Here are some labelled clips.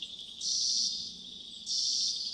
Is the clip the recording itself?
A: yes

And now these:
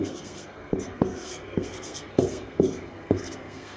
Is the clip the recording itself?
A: no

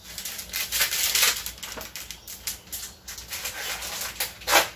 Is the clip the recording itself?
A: yes